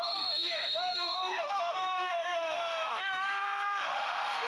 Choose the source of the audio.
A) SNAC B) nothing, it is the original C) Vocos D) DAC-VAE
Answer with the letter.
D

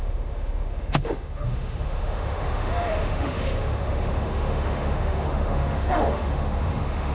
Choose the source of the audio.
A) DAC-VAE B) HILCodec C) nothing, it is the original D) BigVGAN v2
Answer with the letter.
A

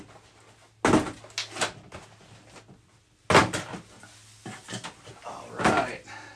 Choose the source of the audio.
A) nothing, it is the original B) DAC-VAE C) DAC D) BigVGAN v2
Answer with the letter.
A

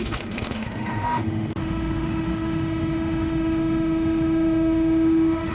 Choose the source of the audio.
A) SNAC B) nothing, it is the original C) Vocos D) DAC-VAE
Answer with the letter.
D